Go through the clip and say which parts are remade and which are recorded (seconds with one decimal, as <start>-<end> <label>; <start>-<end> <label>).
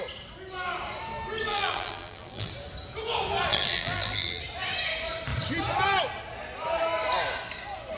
0.0-1.5 recorded; 1.5-2.5 remade; 2.5-3.5 recorded; 3.5-4.4 remade; 4.4-8.0 recorded